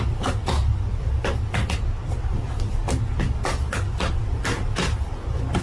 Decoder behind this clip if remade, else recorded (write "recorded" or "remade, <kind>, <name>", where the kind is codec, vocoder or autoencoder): recorded